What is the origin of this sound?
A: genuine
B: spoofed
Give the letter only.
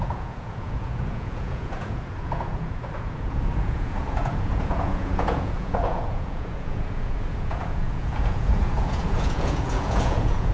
B